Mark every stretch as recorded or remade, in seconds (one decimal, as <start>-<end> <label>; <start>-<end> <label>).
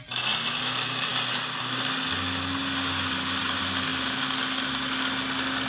0.0-5.7 recorded